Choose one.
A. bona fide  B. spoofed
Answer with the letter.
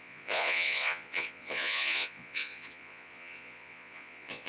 B